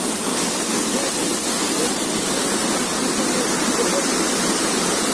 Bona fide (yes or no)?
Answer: yes